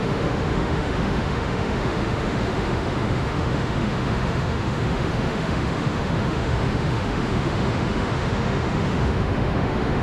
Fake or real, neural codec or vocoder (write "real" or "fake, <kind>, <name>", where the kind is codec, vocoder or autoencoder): fake, autoencoder, DAC-VAE